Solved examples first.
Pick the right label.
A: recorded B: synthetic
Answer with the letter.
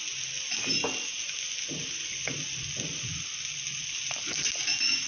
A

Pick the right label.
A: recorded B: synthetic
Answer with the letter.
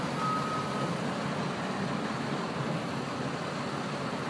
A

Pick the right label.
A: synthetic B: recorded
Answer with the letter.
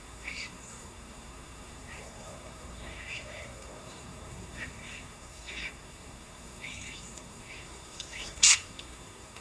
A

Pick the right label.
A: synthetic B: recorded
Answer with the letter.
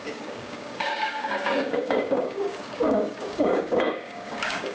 A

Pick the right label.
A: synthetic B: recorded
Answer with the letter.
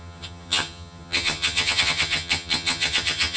A